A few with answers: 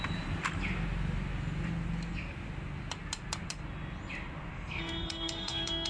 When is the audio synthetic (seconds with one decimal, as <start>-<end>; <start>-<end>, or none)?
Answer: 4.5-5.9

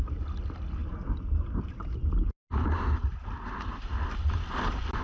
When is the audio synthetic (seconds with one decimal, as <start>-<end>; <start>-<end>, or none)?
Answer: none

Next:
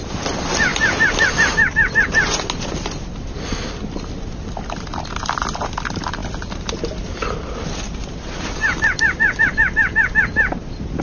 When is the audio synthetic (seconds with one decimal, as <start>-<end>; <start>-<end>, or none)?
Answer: none

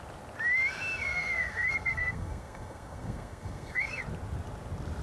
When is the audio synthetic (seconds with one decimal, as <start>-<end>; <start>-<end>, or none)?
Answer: 1.0-4.0

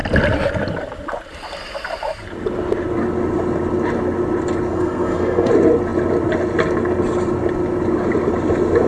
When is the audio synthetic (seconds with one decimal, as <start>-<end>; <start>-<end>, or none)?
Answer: 4.7-5.5